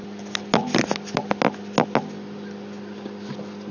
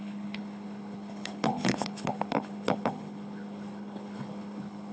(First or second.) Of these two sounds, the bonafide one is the first